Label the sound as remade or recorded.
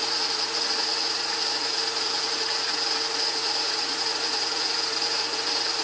remade